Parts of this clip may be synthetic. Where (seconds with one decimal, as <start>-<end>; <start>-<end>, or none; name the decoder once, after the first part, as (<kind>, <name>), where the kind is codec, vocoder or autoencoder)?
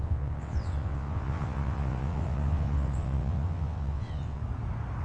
0.0-4.4 (vocoder, WaveNeXt)